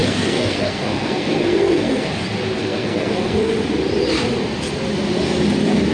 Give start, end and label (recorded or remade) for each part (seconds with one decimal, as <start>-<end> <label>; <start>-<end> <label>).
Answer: 0.0-2.1 remade; 2.1-2.6 recorded; 2.6-3.5 remade; 3.5-5.9 recorded